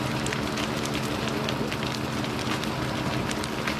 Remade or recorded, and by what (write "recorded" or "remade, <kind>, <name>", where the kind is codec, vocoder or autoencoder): recorded